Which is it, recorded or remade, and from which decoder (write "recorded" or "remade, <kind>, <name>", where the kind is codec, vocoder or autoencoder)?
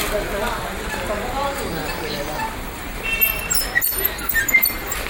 recorded